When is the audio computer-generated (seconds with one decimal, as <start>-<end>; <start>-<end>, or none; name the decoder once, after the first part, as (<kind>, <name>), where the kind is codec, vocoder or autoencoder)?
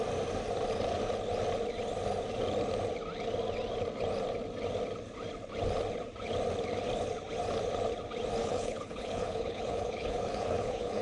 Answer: 8.4-11.0 (codec, HILCodec)